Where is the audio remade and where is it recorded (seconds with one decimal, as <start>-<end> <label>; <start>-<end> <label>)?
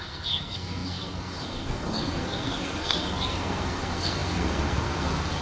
0.0-5.4 remade